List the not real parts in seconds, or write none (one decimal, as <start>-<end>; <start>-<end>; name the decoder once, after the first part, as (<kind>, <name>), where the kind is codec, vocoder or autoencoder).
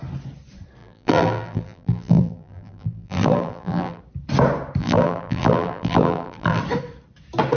0.8-4.0 (vocoder, BigVGAN v2); 4.8-6.6